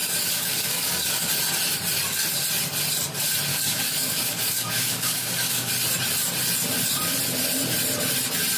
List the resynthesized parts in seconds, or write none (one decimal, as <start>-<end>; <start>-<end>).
0.0-1.3; 3.5-5.7